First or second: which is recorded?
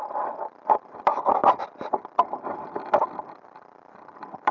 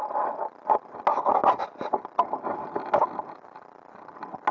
second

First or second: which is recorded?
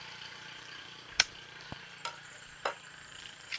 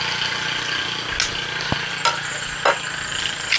second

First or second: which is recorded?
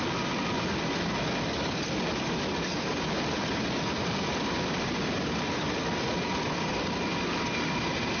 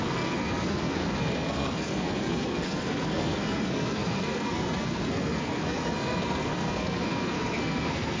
first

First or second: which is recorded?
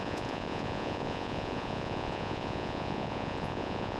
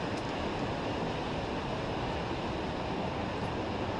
second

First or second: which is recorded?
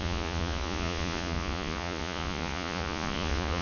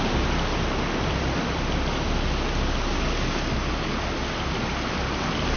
second